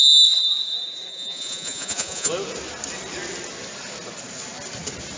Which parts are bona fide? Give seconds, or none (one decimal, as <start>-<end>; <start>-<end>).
0.0-1.1; 2.3-5.2